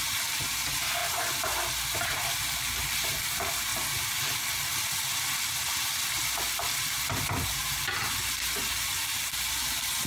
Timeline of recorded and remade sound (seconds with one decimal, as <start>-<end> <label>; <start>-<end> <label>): 0.0-1.0 recorded; 1.0-2.4 remade; 2.4-6.2 recorded; 6.2-7.6 remade; 7.6-10.1 recorded